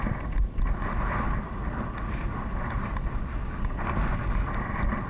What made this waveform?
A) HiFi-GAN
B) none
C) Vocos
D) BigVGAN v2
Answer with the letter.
B